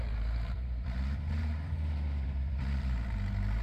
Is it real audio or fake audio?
fake